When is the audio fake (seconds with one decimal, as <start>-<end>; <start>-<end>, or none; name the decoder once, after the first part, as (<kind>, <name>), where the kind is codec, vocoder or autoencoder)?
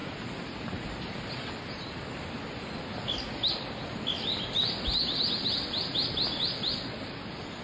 none